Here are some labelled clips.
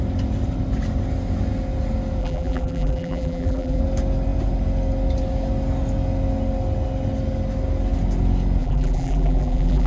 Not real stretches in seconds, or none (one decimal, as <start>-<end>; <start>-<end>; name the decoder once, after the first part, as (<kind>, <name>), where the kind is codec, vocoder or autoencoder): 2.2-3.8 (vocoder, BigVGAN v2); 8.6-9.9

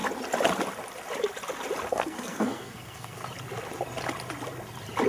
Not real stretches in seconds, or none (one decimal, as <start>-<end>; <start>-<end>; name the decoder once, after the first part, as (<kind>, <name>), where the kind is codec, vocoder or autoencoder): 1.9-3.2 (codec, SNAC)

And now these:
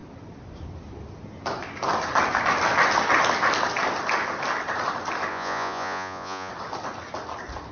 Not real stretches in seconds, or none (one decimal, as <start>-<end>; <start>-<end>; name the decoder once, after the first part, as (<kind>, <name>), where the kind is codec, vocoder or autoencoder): 5.3-6.5 (vocoder, Vocos)

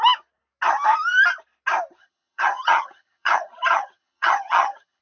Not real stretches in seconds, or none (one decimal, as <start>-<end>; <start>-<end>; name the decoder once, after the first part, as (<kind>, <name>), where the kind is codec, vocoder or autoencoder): 2.0-5.0 (vocoder, HiFi-GAN)